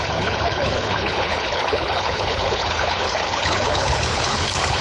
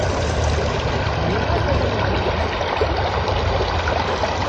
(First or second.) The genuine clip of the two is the second